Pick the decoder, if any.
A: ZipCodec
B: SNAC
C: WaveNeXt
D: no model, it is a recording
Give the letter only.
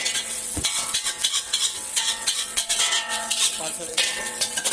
C